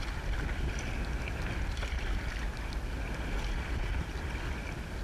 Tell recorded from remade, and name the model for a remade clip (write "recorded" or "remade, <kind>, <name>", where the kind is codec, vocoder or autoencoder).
recorded